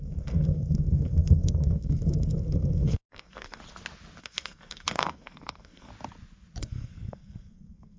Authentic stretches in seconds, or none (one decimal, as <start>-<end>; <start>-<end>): 3.6-4.2; 5.9-6.6